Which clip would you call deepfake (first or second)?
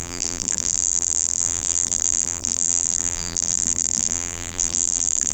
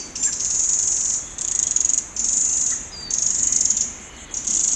first